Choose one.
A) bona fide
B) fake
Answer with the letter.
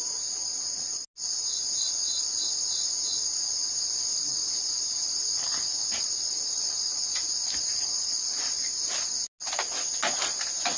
A